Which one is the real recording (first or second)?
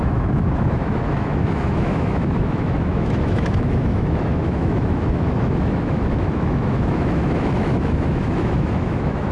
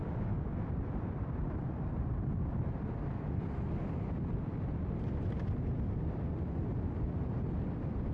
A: second